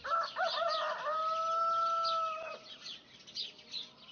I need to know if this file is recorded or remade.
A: recorded